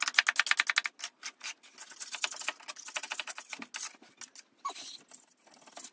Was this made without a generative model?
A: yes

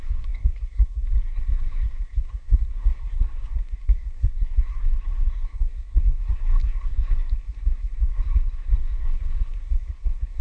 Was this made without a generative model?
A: no